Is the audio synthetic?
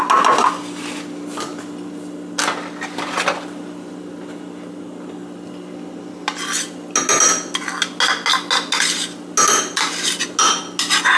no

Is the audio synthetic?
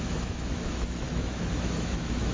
yes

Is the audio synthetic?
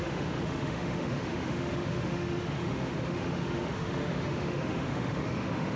yes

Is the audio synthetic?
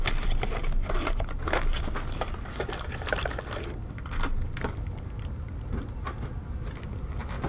no